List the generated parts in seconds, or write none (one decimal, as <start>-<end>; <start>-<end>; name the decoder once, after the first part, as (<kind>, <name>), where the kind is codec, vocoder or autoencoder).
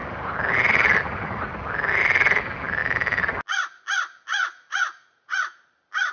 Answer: 4.3-5.6 (vocoder, Vocos)